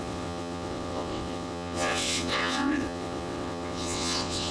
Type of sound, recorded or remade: remade